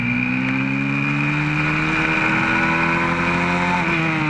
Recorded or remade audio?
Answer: recorded